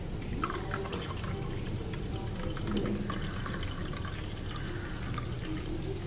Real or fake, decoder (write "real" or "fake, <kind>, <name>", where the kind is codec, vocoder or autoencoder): real